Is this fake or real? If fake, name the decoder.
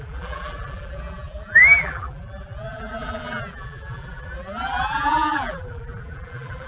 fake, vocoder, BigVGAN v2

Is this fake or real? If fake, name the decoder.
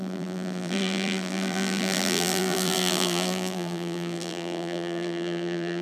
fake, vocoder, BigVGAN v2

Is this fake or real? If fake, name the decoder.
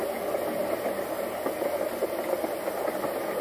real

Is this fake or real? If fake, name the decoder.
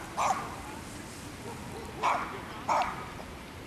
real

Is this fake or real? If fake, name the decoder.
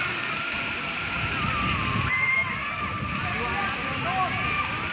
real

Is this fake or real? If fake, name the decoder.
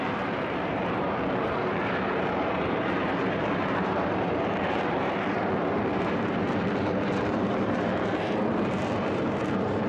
fake, vocoder, BigVGAN v2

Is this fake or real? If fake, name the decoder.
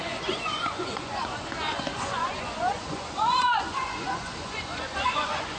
fake, vocoder, Vocos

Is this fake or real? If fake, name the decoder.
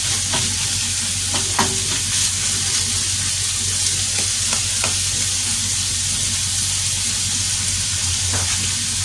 real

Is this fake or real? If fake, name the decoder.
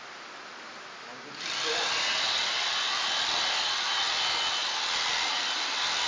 real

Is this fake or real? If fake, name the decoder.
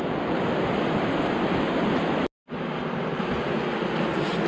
real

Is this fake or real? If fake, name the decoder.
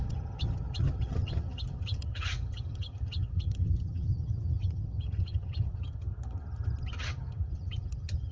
fake, vocoder, HiFi-GAN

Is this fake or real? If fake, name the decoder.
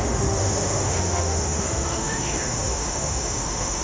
fake, autoencoder, DAC-VAE